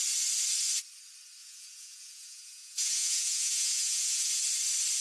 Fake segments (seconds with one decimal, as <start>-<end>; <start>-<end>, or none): 1.4-4.4